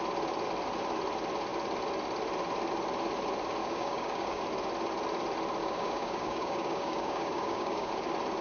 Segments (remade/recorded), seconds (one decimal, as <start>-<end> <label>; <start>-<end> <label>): 0.0-3.6 recorded; 3.6-4.4 remade; 4.4-5.6 recorded; 5.6-7.9 remade; 7.9-8.4 recorded